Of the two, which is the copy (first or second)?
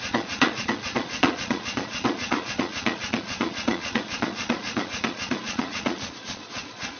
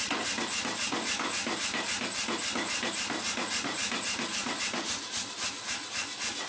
first